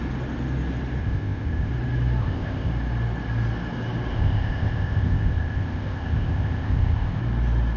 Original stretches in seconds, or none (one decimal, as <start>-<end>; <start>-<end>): 0.0-1.0; 1.7-2.2; 2.7-4.1; 7.2-7.8